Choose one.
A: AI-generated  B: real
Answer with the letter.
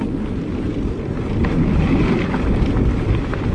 B